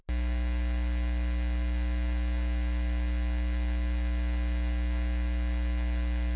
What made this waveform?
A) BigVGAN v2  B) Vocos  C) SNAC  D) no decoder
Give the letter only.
D